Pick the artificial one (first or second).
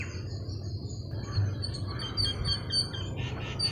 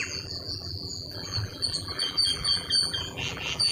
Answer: second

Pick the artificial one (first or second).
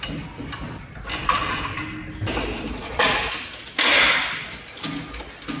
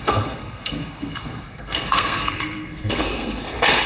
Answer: second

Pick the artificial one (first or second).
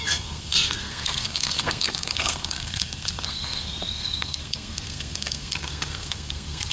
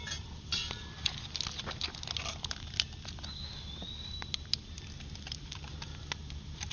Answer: first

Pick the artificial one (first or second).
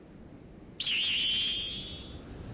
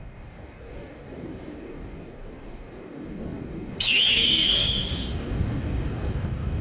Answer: second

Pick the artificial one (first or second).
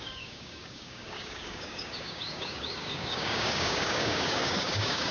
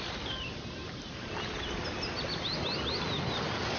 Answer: first